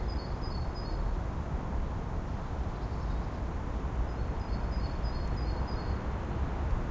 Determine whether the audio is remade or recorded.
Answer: recorded